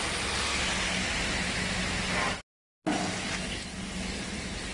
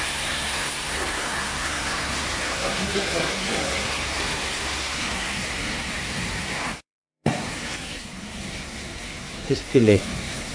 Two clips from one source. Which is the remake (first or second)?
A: second